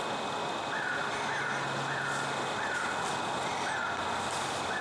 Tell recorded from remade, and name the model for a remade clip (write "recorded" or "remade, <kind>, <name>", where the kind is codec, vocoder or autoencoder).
recorded